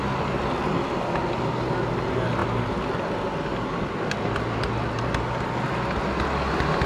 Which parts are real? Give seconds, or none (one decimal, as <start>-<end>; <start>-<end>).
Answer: 0.0-6.9